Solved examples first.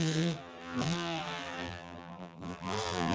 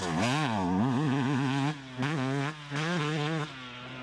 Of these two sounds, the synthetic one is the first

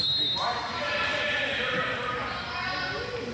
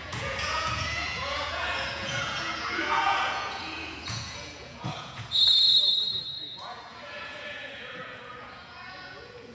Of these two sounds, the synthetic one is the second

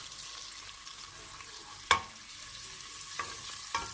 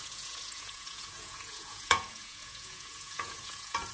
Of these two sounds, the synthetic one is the second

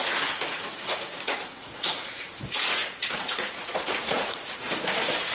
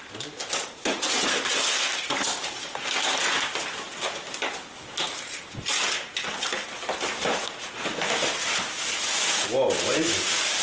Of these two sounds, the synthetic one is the first